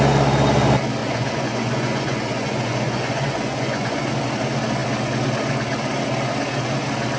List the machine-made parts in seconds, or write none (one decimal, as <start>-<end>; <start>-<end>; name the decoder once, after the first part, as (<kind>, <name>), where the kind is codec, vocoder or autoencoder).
1.0-4.1 (vocoder, Vocos)